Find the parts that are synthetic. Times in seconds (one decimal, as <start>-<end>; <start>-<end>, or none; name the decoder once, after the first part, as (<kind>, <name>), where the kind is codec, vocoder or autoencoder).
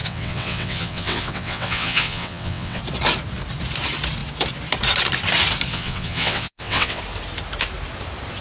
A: 0.0-2.8 (vocoder, WaveNeXt); 5.7-7.0